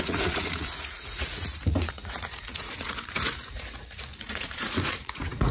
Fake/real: fake